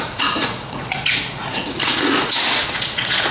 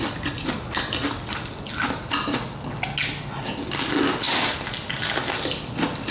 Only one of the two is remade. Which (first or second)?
first